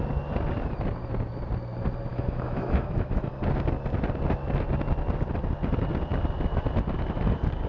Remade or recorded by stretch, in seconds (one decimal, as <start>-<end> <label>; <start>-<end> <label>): 0.0-2.1 recorded; 2.1-3.3 remade; 3.3-7.7 recorded

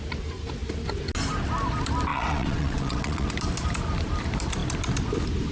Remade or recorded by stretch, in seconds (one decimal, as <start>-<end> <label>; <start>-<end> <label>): 0.0-2.1 recorded; 2.1-3.3 remade; 3.3-5.5 recorded

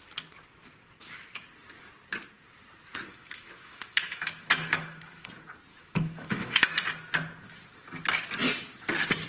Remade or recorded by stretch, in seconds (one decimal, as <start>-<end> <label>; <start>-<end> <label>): 0.0-3.1 recorded; 3.1-5.3 remade; 5.3-5.7 recorded; 5.7-6.6 remade; 6.6-9.3 recorded

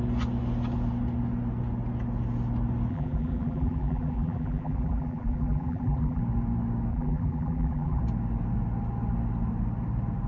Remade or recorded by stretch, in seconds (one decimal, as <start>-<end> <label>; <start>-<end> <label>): 0.0-2.9 recorded; 2.9-6.2 remade; 6.2-6.9 recorded; 6.9-8.0 remade; 8.0-10.3 recorded

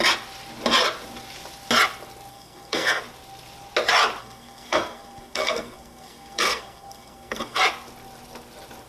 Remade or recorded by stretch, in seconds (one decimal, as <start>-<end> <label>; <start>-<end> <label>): 0.0-2.3 recorded; 2.3-3.0 remade; 3.0-4.2 recorded; 4.2-7.6 remade; 7.6-8.9 recorded

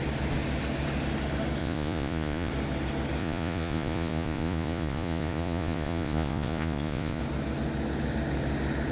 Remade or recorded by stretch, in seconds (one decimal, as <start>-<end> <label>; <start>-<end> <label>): 0.0-1.6 recorded; 1.6-2.5 remade; 2.5-3.2 recorded; 3.2-7.2 remade; 7.2-8.9 recorded

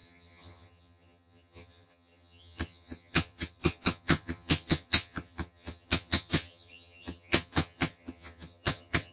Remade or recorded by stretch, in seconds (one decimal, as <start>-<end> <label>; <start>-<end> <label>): 0.0-9.1 remade

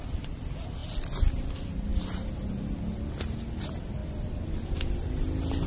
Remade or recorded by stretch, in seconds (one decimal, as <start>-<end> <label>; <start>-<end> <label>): 0.0-4.0 recorded; 4.0-4.7 remade; 4.7-5.7 recorded